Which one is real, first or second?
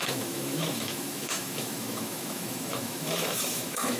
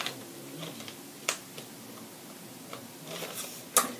second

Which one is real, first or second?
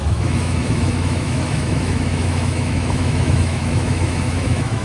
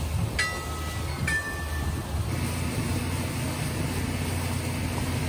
second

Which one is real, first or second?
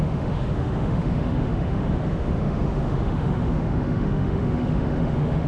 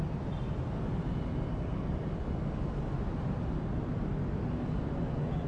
second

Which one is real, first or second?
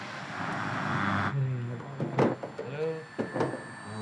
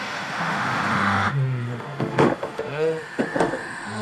first